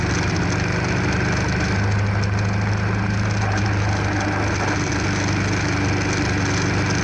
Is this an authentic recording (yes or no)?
yes